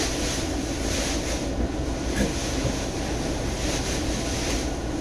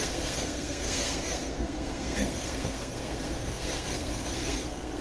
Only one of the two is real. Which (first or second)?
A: first